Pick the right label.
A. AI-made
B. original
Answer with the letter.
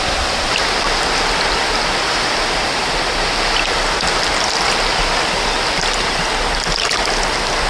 B